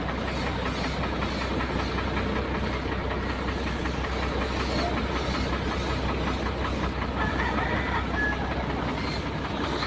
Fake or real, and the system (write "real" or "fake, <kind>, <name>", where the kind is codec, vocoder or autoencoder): real